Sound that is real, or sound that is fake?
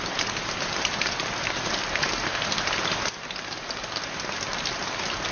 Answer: real